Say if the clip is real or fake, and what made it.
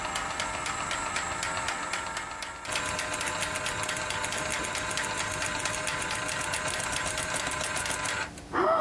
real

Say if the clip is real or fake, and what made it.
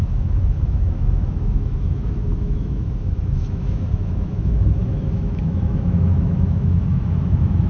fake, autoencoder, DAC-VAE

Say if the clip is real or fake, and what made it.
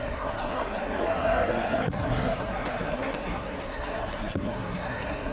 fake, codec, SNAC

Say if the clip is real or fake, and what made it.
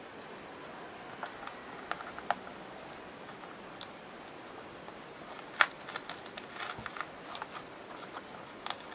real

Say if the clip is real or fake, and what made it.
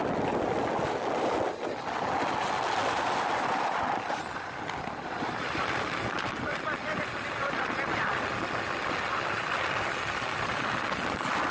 real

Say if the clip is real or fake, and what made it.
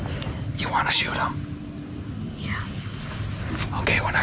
real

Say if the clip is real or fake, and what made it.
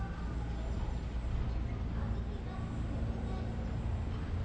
real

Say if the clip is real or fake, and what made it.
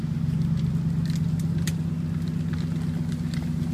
real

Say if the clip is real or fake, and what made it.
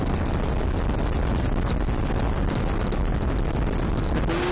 real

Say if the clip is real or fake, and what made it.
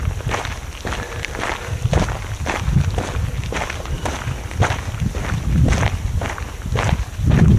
real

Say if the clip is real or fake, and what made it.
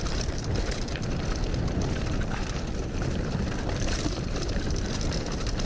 fake, vocoder, BigVGAN v2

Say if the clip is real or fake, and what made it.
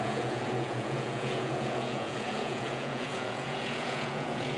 fake, vocoder, Vocos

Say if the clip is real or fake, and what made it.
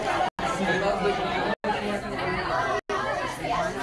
real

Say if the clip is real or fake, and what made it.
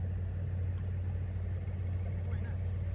real